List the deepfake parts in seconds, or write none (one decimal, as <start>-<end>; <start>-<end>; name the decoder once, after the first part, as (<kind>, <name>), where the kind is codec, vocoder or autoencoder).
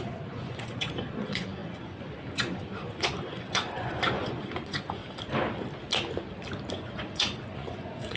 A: 0.0-5.0 (vocoder, Vocos); 6.7-8.2